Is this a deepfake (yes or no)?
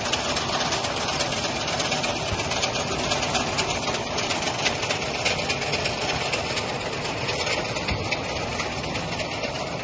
no